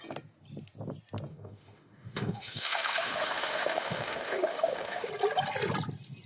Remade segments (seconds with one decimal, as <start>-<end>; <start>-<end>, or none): 1.3-5.1